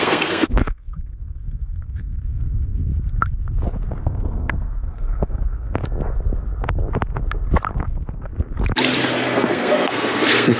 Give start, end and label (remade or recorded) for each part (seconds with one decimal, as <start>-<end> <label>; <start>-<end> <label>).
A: 0.0-2.9 remade; 2.9-4.0 recorded; 4.0-5.8 remade; 5.8-7.8 recorded; 7.8-8.3 remade; 8.3-9.1 recorded; 9.1-10.6 remade